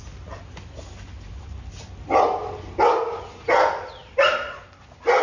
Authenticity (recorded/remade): recorded